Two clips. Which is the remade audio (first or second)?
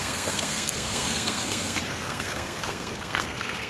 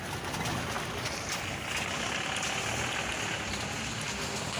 first